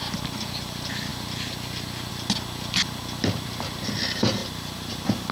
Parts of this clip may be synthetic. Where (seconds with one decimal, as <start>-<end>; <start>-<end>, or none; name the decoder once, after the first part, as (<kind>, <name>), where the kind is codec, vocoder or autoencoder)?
4.4-5.3 (vocoder, BigVGAN v2)